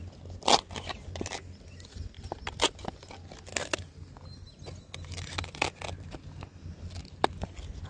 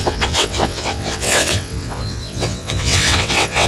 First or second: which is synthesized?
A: second